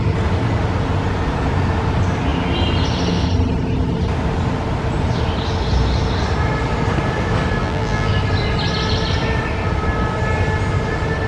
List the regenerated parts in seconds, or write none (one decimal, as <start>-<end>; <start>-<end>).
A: 7.6-8.1